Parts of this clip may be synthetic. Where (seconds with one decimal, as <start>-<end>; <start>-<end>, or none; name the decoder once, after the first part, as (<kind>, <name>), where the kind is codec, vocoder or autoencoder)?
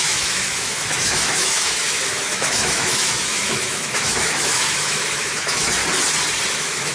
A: 0.0-5.8 (autoencoder, DAC-VAE); 6.5-6.9